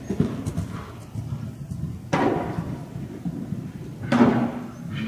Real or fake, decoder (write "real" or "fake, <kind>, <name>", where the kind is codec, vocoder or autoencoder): real